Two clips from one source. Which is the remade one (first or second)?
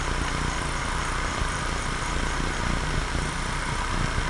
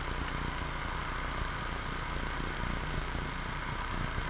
first